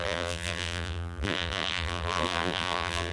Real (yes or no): no